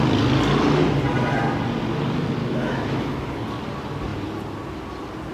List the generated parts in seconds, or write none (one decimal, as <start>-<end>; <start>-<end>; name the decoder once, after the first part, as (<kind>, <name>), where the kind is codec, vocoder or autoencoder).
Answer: 2.4-3.4 (autoencoder, DAC-VAE)